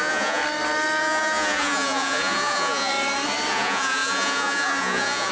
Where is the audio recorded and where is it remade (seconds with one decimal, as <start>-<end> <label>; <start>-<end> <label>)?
0.0-0.4 remade; 0.4-1.0 recorded; 1.0-2.9 remade; 2.9-3.5 recorded; 3.5-5.3 remade